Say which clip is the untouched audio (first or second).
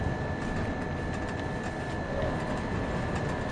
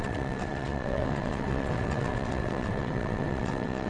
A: first